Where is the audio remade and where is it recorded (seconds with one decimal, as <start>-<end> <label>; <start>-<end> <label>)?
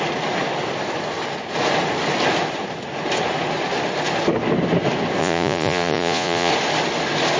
0.0-5.2 recorded; 5.2-6.5 remade; 6.5-7.4 recorded